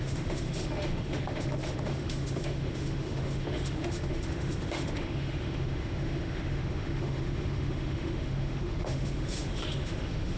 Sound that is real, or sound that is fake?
fake